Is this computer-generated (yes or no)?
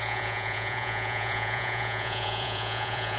yes